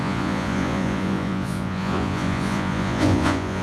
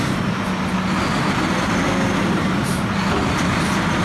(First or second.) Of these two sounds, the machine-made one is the first